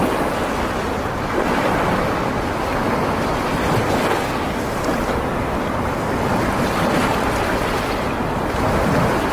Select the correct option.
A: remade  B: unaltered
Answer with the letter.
B